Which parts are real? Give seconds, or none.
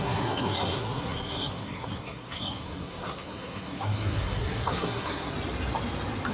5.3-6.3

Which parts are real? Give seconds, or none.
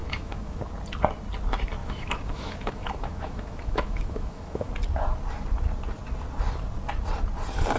0.6-1.8; 4.7-7.8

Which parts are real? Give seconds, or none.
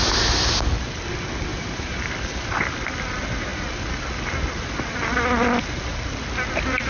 0.0-1.5; 2.1-6.9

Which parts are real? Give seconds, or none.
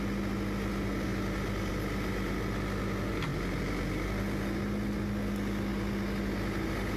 0.0-7.0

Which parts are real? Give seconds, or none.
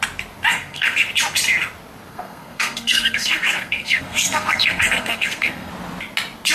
0.0-0.5; 1.1-2.1; 5.7-6.5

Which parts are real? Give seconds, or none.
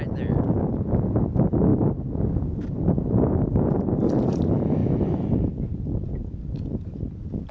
0.0-7.5